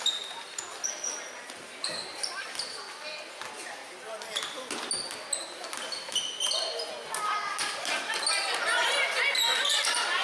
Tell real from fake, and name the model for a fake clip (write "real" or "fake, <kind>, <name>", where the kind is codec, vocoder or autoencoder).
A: real